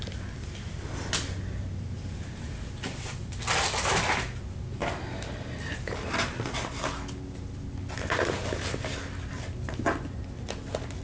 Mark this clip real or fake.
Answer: real